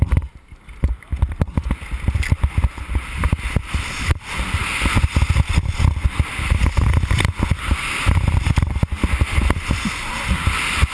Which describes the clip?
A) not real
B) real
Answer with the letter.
B